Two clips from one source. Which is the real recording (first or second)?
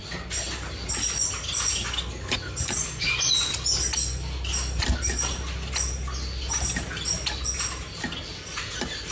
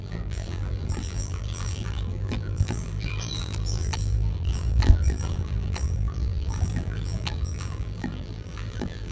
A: first